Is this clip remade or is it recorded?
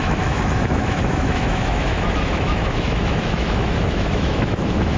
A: remade